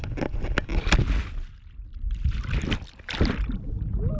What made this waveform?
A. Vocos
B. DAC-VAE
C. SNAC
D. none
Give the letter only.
D